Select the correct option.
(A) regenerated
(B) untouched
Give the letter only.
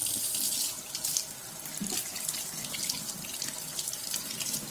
B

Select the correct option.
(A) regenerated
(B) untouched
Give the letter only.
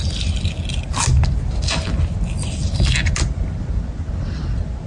B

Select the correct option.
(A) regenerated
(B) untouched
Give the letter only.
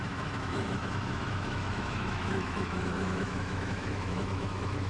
A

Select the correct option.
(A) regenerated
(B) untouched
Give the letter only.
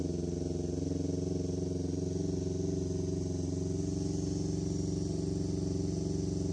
B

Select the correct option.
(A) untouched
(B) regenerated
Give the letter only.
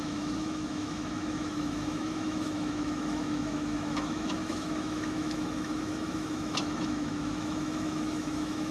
B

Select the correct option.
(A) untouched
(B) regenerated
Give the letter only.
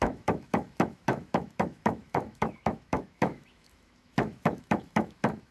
B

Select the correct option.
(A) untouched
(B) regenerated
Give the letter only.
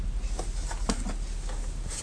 A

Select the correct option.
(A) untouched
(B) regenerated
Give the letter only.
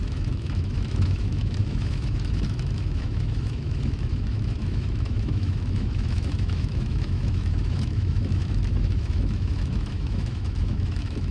B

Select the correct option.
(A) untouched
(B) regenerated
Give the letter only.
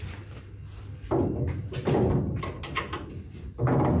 A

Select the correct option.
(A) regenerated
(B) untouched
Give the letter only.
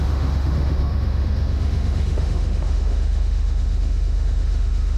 A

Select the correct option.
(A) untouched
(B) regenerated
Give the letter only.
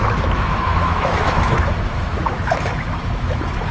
B